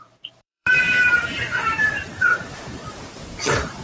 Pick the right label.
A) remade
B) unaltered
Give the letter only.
A